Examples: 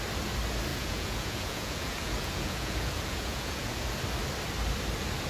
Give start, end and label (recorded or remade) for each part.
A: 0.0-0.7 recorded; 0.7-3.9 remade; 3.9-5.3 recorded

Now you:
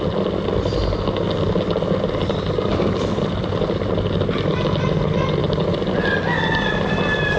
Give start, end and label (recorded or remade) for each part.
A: 0.0-7.4 recorded

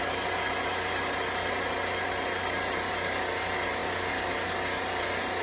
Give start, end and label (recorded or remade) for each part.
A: 0.0-5.4 recorded

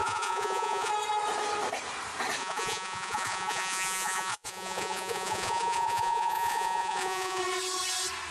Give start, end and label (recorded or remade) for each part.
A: 0.0-0.9 remade; 0.9-2.4 recorded; 2.4-7.4 remade; 7.4-8.3 recorded

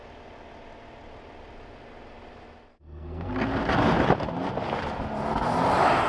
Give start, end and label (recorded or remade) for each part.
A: 0.0-2.7 recorded; 2.7-3.3 remade; 3.3-6.1 recorded